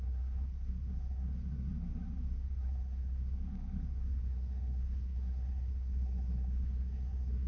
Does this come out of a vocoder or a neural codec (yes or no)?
yes